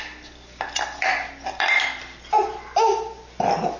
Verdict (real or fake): real